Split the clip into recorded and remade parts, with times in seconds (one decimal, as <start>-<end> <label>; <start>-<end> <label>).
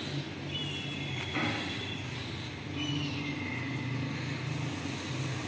0.0-5.5 recorded